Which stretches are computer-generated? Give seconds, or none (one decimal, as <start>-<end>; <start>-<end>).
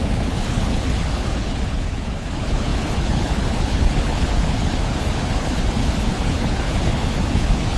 0.0-7.8